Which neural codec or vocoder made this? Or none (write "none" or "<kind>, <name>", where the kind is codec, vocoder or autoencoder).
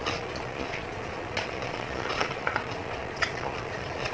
vocoder, Vocos